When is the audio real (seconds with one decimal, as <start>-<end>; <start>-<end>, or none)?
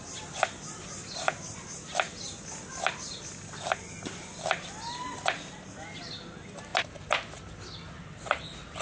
0.0-8.8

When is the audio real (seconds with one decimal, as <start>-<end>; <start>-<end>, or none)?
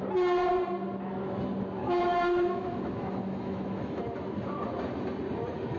0.0-1.8; 4.0-5.8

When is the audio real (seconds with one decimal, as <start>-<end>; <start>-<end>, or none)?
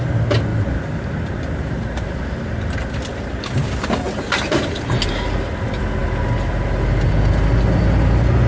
0.0-0.5; 2.5-3.1; 5.0-8.5